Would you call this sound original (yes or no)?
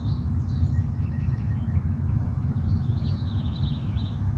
no